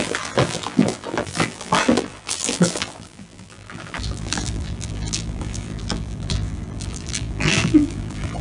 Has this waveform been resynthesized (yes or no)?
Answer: yes